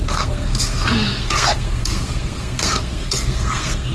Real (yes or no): no